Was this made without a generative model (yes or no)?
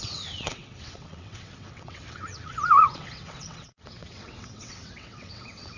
no